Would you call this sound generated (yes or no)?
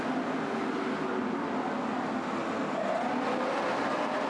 no